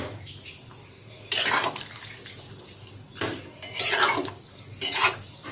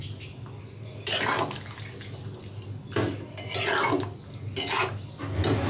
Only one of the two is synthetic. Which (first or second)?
first